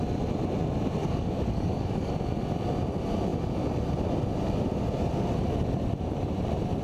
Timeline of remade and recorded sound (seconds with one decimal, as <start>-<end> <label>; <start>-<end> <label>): 0.0-1.0 recorded; 1.0-2.1 remade; 2.1-6.8 recorded